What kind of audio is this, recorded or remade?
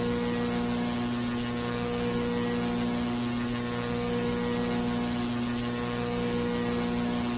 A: recorded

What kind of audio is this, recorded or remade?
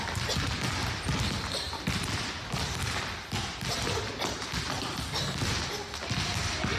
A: recorded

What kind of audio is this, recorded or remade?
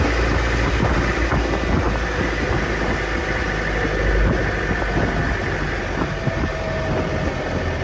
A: recorded